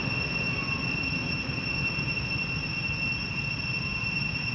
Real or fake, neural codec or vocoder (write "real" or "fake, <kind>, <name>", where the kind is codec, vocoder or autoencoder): real